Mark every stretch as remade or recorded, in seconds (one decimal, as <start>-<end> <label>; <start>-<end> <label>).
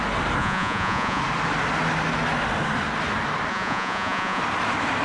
0.0-0.4 recorded; 0.4-1.2 remade; 1.2-3.5 recorded; 3.5-4.4 remade; 4.4-5.0 recorded